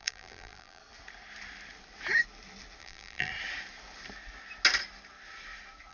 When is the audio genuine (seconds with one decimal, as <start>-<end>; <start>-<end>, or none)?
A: 0.8-2.8; 3.3-5.9